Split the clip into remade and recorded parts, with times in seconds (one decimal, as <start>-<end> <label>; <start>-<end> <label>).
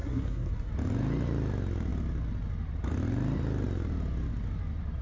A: 0.0-0.7 remade; 0.7-5.0 recorded